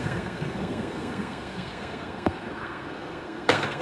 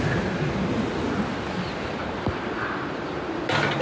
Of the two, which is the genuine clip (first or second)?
second